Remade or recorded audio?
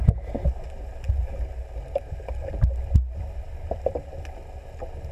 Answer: recorded